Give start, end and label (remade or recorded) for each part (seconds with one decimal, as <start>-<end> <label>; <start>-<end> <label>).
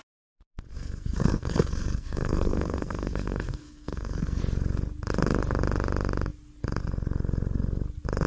0.0-0.7 recorded; 0.7-4.4 remade; 4.4-8.3 recorded